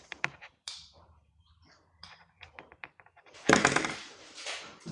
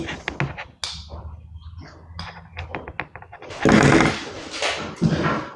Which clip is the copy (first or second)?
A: first